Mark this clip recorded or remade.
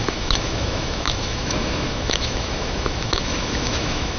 remade